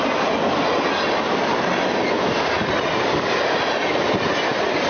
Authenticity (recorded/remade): recorded